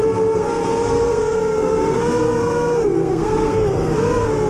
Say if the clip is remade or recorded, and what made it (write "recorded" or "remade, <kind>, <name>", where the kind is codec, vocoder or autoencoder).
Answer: remade, codec, SNAC